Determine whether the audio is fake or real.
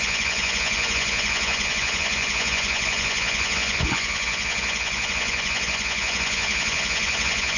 fake